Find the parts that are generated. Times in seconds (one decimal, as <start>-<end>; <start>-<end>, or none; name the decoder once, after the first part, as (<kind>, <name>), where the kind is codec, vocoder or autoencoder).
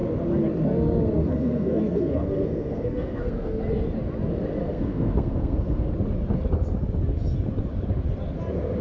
1.2-3.6 (codec, SNAC); 4.6-5.9